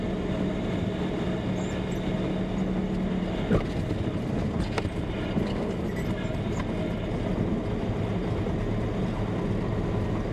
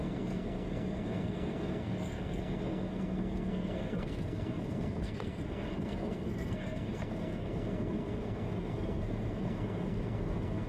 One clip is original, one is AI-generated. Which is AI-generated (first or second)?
second